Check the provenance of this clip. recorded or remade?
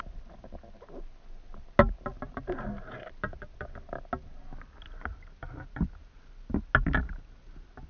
recorded